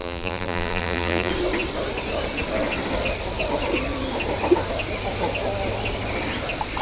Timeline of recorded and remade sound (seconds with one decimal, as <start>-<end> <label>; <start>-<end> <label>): 0.0-1.3 remade; 1.3-6.8 recorded